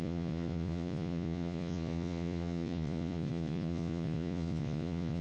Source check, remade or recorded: remade